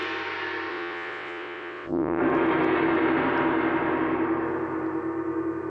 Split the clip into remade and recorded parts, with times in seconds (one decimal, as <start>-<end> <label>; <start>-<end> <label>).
0.0-0.7 recorded; 0.7-2.2 remade; 2.2-5.7 recorded